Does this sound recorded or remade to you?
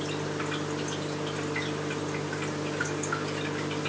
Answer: recorded